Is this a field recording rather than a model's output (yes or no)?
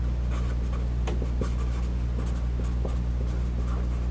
yes